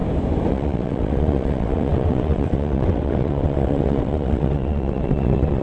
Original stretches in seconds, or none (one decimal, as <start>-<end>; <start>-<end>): 0.0-0.5